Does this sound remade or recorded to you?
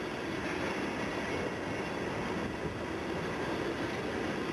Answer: recorded